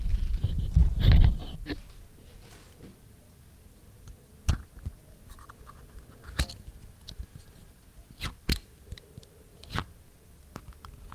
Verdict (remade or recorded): recorded